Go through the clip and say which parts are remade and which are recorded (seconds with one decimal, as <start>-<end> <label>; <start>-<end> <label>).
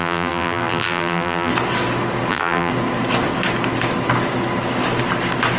0.0-1.5 remade; 1.5-2.3 recorded; 2.3-2.7 remade; 2.7-5.6 recorded